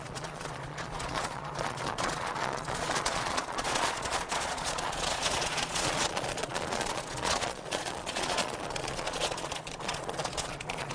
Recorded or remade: remade